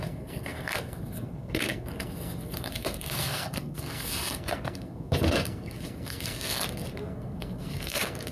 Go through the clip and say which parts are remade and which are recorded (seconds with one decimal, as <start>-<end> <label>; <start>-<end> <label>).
0.0-8.3 remade